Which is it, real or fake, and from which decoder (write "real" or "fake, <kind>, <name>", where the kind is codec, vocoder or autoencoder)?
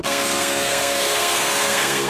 fake, codec, SNAC